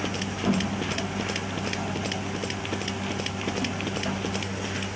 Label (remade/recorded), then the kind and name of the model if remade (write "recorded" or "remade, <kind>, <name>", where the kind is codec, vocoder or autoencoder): recorded